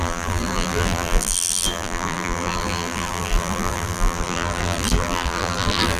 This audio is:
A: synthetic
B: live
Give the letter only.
A